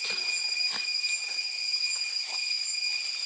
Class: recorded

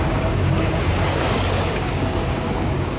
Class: remade